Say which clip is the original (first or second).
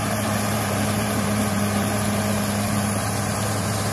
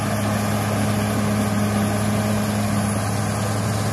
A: second